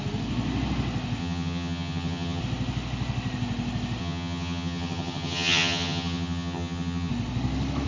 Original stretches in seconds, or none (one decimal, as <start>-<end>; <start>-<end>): 0.0-1.2; 2.4-4.0; 7.1-7.9